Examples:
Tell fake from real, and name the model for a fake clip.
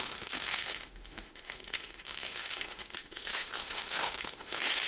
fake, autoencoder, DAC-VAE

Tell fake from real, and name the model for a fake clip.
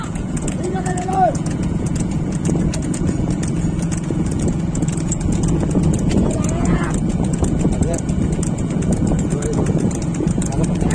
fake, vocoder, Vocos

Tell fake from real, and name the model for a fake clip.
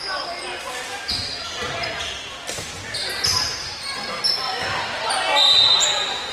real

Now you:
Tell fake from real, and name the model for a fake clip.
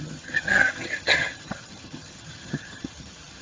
fake, vocoder, HiFi-GAN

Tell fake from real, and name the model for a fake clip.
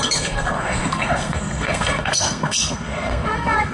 fake, codec, SNAC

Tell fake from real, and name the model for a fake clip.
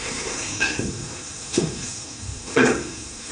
fake, codec, SNAC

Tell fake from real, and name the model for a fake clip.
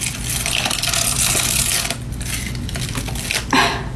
real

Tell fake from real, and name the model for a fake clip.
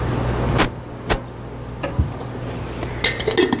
real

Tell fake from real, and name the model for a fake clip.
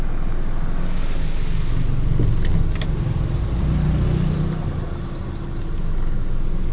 real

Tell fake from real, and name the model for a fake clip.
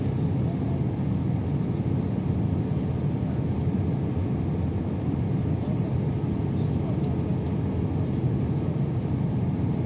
real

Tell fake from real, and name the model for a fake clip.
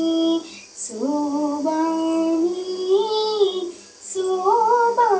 real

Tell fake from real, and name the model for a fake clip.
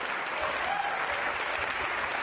real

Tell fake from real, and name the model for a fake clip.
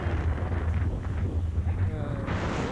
real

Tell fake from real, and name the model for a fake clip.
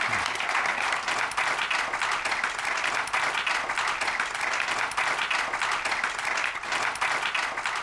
real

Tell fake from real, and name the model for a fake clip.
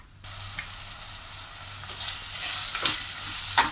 real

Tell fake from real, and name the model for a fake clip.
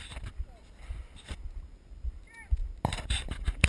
fake, vocoder, BigVGAN v2